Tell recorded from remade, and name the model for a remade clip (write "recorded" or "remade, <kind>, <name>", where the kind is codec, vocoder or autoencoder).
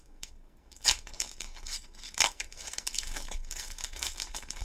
remade, codec, SNAC